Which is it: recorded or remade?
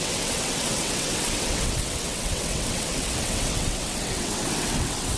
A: remade